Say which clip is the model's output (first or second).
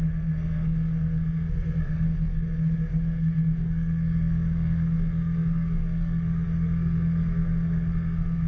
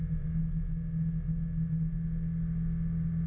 first